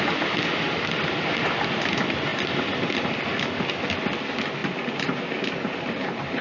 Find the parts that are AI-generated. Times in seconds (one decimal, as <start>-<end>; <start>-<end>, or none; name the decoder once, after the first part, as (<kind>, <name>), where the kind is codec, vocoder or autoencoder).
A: 4.6-6.4 (vocoder, BigVGAN v2)